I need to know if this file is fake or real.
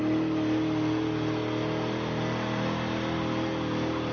real